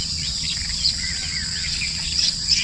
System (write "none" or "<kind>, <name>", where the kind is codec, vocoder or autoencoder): vocoder, Vocos